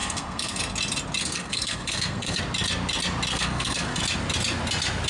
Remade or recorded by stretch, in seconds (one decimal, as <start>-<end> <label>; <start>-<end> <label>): 0.0-0.7 remade; 0.7-1.2 recorded; 1.2-2.4 remade; 2.4-3.3 recorded; 3.3-4.0 remade; 4.0-5.1 recorded